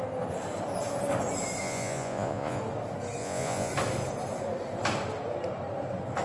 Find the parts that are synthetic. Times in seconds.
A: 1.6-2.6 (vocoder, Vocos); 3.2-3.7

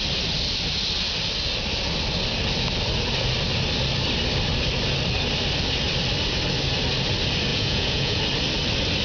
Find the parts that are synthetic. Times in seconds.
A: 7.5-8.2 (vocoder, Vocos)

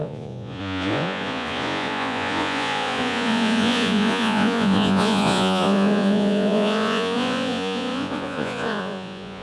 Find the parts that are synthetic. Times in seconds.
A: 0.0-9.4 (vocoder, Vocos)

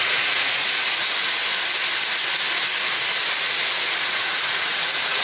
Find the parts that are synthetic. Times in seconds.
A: 0.0-1.4 (vocoder, Vocos); 4.0-5.2

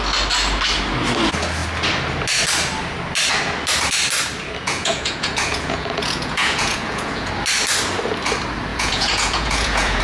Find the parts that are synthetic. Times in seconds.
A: 4.6-7.3 (vocoder, Vocos); 8.7-10.0